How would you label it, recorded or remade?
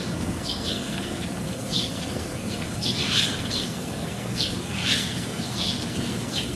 remade